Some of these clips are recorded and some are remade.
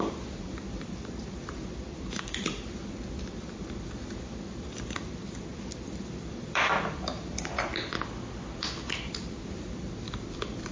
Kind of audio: remade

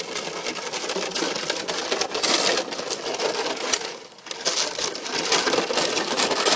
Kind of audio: remade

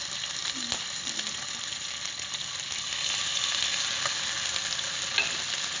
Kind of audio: recorded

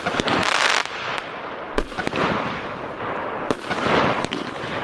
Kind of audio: remade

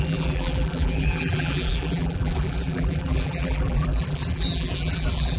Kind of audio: remade